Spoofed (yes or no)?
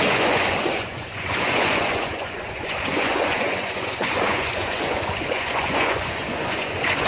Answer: yes